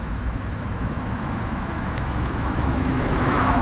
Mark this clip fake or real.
fake